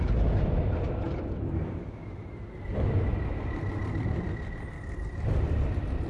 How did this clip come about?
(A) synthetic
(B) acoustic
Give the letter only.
B